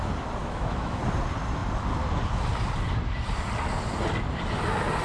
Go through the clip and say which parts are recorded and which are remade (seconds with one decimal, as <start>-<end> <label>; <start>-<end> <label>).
0.0-0.4 recorded; 0.4-1.0 remade; 1.0-5.0 recorded